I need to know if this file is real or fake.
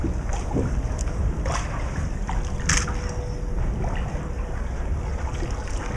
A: real